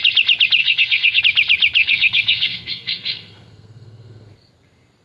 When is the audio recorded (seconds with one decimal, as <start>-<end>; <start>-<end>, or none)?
0.0-0.6; 1.2-1.8; 4.3-5.0